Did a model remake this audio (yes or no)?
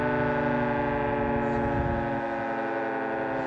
no